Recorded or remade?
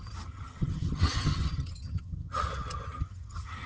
remade